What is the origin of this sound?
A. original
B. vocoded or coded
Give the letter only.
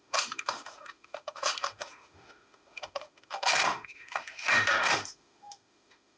B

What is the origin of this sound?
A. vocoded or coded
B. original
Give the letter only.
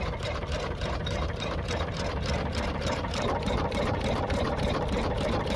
A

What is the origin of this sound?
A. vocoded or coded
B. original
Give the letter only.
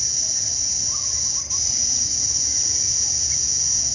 B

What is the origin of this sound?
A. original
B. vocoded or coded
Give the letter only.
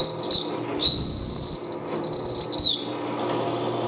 A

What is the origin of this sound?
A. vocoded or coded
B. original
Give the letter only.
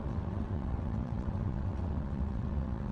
A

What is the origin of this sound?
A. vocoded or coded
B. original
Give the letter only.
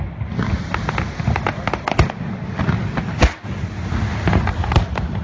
B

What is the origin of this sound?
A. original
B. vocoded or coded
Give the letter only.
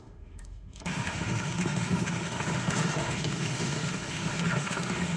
B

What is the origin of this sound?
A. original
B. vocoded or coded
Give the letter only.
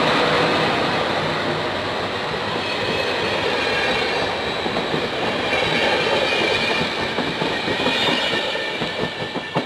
A